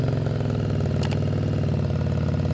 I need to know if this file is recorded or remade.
recorded